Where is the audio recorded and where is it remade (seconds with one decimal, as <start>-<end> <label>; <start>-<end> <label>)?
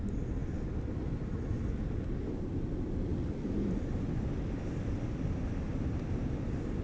0.0-6.8 recorded